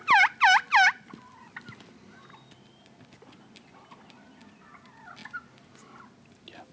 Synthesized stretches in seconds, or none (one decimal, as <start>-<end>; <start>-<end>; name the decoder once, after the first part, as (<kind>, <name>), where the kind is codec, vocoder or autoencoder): none